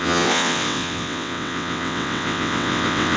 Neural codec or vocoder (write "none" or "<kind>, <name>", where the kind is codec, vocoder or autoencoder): vocoder, WaveNeXt